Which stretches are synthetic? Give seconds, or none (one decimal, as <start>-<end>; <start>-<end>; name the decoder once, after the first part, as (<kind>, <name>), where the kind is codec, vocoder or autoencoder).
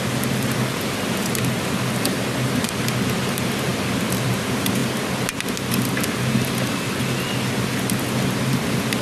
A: none